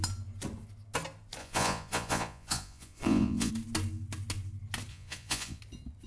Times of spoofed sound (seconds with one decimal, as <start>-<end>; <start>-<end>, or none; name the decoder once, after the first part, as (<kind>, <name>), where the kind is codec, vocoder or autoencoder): 1.4-3.5 (vocoder, Vocos); 4.9-5.6